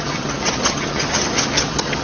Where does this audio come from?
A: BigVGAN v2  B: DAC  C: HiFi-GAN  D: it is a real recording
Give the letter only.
C